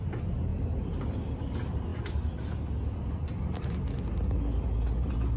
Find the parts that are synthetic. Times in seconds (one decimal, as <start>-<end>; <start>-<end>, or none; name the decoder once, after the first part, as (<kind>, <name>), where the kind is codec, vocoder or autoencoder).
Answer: 0.5-1.1 (vocoder, BigVGAN v2)

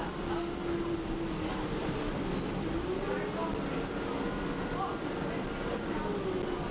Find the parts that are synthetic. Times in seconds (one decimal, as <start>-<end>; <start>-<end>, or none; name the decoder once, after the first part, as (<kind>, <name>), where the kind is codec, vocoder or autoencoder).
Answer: 1.8-2.5 (vocoder, BigVGAN v2); 4.9-5.5

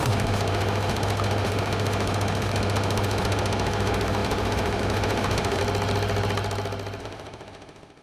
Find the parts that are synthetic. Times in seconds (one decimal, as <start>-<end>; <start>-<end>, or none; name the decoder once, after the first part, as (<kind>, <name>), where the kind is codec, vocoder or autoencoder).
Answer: 0.0-5.6 (autoencoder, DAC-VAE); 7.0-8.0

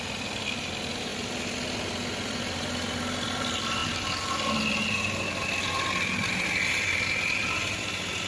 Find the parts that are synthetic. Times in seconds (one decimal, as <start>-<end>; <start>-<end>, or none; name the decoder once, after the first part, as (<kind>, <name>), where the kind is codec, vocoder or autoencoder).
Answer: none